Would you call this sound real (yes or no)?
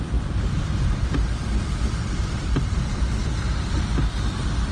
no